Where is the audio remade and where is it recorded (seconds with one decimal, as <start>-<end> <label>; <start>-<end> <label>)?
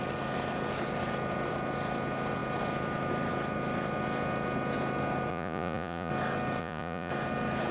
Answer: 0.0-5.3 recorded; 5.3-6.1 remade; 6.1-6.6 recorded; 6.6-7.1 remade; 7.1-7.7 recorded